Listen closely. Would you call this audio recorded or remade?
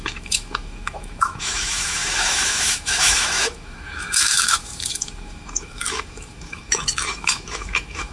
remade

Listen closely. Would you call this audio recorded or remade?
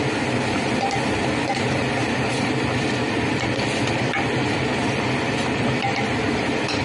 remade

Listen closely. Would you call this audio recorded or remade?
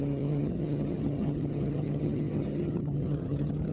remade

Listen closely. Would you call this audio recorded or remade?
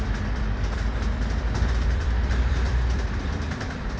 remade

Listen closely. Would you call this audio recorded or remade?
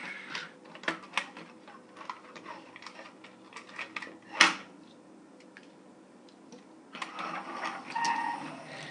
recorded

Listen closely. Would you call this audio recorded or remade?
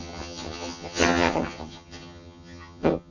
remade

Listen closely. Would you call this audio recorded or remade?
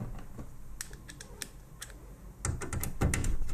recorded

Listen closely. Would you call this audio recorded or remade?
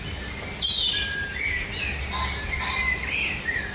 recorded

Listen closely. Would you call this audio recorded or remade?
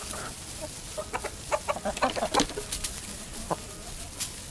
recorded